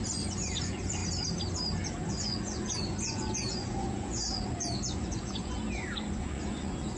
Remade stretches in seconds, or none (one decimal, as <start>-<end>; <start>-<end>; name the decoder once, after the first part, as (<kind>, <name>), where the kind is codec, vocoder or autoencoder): 0.0-1.0 (vocoder, Vocos); 2.1-7.0